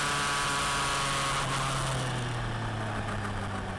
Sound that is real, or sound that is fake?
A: real